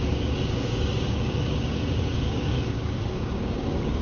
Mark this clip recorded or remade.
remade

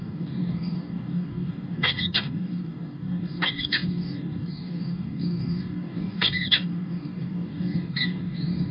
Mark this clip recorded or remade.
remade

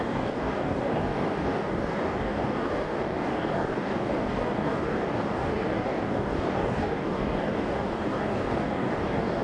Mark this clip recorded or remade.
remade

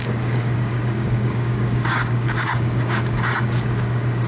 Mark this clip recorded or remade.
remade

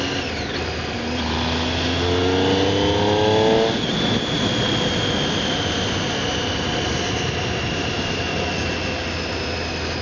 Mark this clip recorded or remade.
recorded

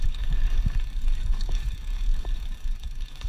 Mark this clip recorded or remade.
remade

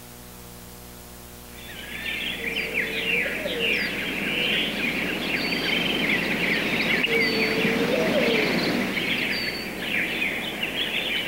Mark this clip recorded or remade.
recorded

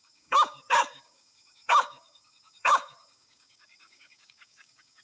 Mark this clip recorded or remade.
remade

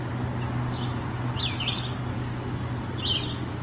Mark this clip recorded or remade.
recorded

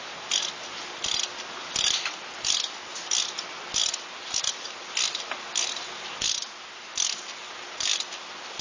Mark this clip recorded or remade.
recorded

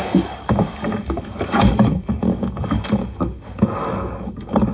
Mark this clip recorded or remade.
remade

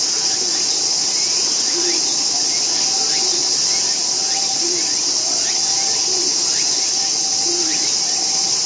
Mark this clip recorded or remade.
recorded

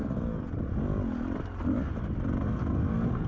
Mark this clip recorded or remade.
recorded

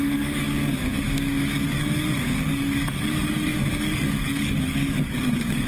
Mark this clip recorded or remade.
remade